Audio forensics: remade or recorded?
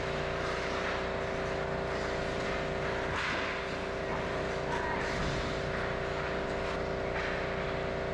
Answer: recorded